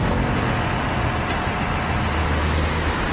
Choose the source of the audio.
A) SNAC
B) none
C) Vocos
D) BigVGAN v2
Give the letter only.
B